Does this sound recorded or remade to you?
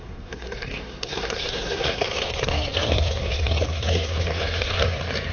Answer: remade